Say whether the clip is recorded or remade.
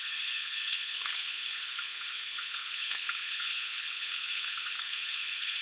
remade